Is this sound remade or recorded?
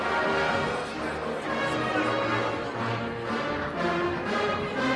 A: recorded